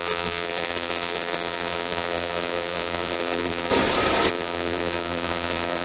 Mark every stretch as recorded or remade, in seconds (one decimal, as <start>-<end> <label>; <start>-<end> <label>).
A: 0.0-3.7 remade; 3.7-4.3 recorded; 4.3-5.8 remade